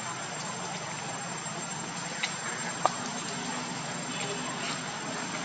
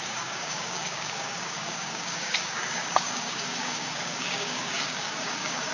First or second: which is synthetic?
second